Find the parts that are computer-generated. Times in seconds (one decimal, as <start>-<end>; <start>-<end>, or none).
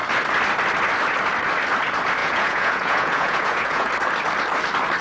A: 2.2-3.9